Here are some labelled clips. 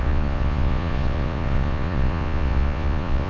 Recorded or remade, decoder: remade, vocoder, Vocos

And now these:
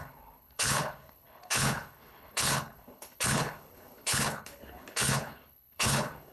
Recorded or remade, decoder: remade, codec, HILCodec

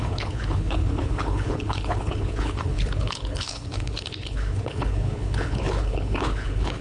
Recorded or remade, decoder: remade, codec, HILCodec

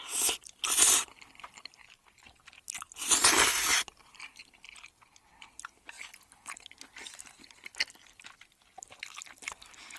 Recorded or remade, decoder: recorded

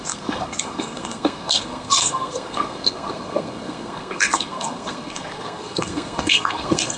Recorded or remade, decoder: remade, codec, SNAC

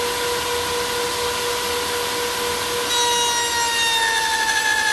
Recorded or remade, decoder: recorded